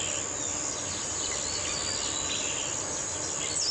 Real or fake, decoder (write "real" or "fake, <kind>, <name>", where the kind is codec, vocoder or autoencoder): real